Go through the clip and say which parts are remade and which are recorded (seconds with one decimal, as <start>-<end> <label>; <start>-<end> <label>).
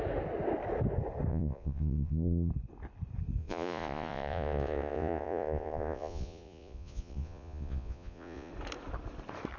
0.0-1.3 recorded; 1.3-2.5 remade; 2.5-3.4 recorded; 3.4-8.5 remade; 8.5-9.6 recorded